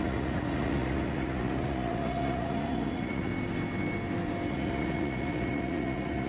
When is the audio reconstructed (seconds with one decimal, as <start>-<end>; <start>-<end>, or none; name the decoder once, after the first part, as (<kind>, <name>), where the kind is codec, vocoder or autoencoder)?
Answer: 0.0-3.3 (vocoder, Vocos); 4.5-6.3